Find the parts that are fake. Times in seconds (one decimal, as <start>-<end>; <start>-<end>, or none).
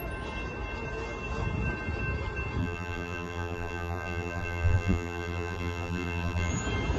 2.6-6.5